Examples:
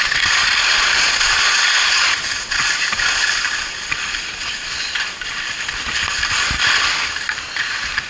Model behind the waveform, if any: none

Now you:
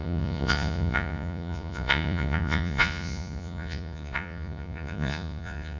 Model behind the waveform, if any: vocoder, Vocos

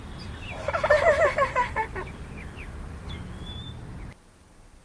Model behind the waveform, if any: none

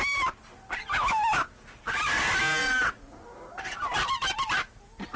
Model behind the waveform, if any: none